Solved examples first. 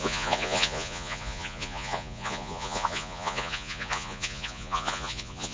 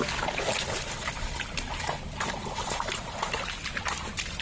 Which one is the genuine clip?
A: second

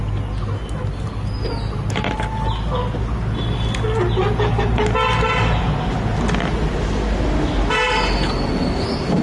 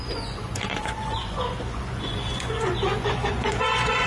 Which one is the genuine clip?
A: first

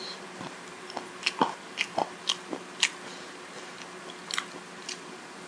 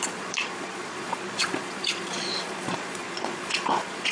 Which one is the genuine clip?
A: first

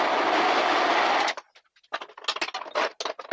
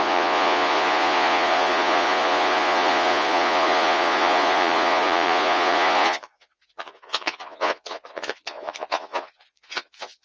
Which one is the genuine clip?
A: first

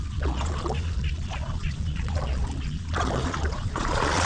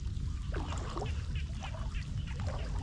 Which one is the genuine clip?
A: second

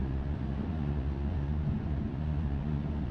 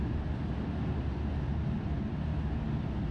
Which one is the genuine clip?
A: second